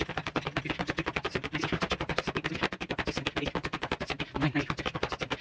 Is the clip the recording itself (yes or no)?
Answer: yes